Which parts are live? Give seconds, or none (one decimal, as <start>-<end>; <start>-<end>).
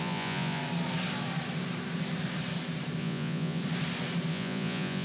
0.6-3.0; 3.6-4.3